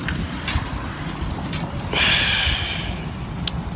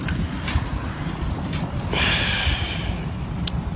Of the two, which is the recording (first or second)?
first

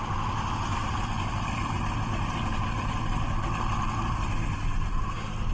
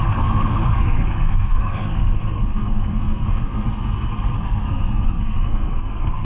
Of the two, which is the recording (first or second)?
first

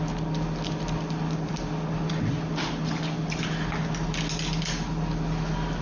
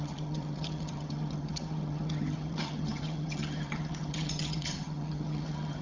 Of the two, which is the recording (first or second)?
first